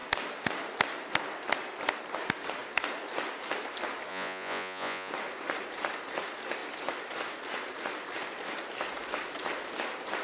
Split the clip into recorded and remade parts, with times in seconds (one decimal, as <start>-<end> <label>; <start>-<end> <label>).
0.0-4.1 recorded; 4.1-5.1 remade; 5.1-10.2 recorded